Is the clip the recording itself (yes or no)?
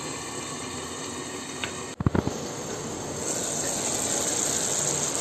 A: yes